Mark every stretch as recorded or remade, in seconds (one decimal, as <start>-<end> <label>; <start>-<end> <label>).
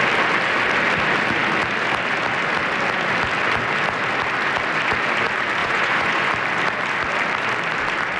0.0-5.6 recorded; 5.6-6.3 remade; 6.3-8.2 recorded